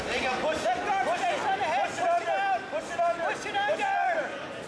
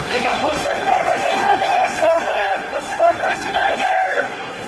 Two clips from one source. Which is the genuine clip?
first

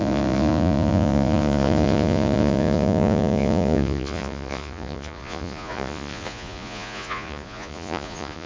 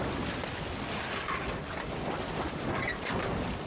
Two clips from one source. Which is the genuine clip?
second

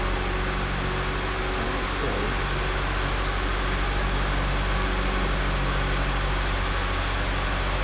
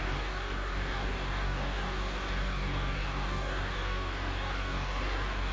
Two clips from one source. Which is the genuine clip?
first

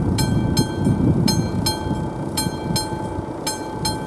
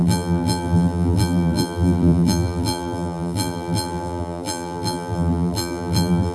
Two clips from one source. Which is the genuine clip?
first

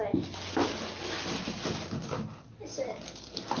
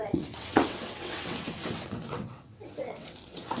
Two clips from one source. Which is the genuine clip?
first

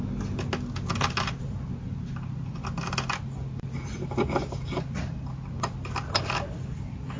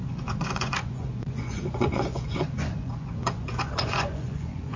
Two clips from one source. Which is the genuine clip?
first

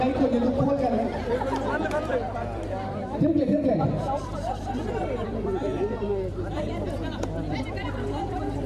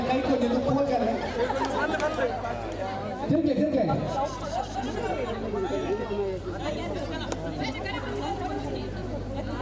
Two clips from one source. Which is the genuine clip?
second